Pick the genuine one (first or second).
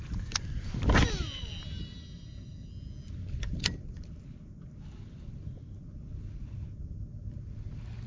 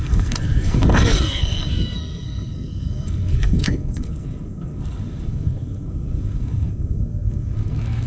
first